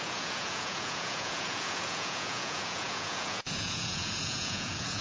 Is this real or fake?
fake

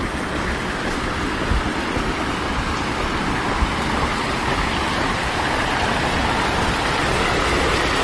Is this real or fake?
real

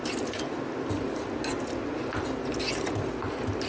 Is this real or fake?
real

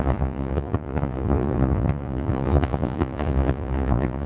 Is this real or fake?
fake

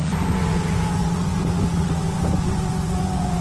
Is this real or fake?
fake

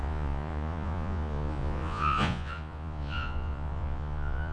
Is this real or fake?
fake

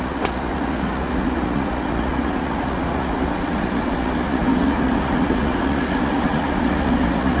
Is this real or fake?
fake